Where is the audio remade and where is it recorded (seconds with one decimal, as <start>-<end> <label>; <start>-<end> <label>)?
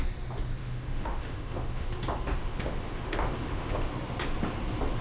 0.0-0.6 recorded; 0.6-1.9 remade; 1.9-2.4 recorded; 2.4-3.9 remade; 3.9-5.0 recorded